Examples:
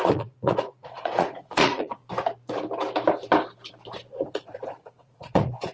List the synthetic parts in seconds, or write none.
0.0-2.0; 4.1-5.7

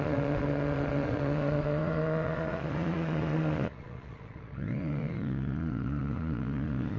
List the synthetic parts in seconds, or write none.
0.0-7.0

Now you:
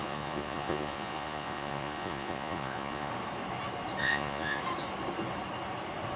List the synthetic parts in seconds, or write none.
0.0-3.1; 4.0-4.6

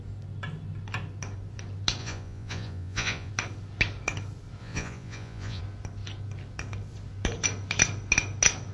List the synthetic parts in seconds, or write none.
2.0-3.3; 4.6-5.6

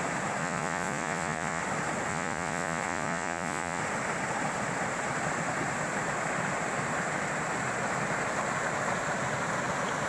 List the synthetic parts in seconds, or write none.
0.4-1.6; 2.1-3.8

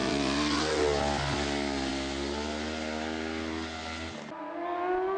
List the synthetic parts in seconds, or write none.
0.0-0.8

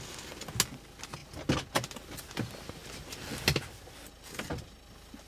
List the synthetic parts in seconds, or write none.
none

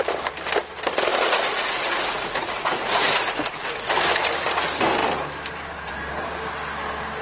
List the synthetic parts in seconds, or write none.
1.1-3.9